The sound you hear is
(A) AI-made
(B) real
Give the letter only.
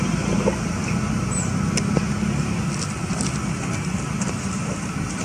B